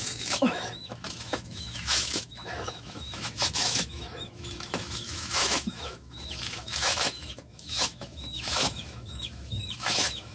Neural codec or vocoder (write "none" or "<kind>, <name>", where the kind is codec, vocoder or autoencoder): autoencoder, DAC-VAE